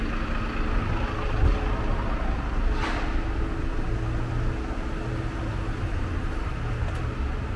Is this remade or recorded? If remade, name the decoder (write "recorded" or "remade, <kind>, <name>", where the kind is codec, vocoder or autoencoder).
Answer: recorded